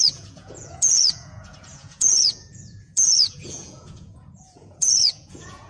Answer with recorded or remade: remade